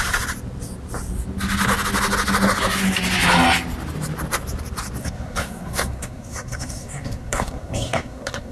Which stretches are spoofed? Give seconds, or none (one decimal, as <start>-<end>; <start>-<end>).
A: 5.0-8.5